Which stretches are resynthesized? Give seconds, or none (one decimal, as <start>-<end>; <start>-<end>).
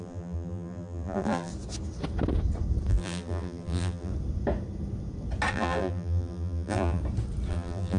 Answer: 0.0-1.5; 2.9-4.1; 5.5-7.0; 7.5-8.0